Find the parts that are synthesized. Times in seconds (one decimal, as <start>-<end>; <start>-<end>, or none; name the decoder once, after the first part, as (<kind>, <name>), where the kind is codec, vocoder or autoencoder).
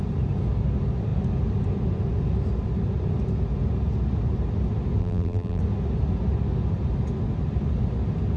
5.0-5.6 (vocoder, BigVGAN v2)